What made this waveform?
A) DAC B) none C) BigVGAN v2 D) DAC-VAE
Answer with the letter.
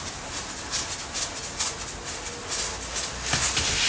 B